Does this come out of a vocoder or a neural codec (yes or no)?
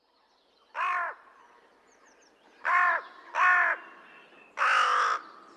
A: no